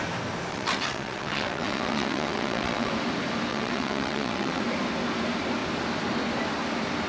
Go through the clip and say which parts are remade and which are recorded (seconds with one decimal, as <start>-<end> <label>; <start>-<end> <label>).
0.0-0.5 recorded; 0.5-2.9 remade; 2.9-3.5 recorded; 3.5-4.6 remade; 4.6-7.1 recorded

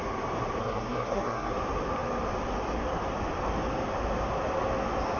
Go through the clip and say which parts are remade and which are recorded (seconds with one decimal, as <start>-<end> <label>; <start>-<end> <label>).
0.0-0.6 recorded; 0.6-1.5 remade; 1.5-5.2 recorded

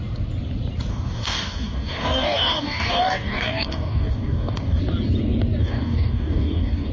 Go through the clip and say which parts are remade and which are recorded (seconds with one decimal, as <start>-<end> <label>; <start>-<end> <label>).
0.0-0.9 recorded; 0.9-4.8 remade; 4.8-5.6 recorded; 5.6-6.9 remade